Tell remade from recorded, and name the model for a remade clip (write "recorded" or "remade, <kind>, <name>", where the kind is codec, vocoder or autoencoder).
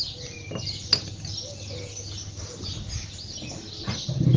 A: recorded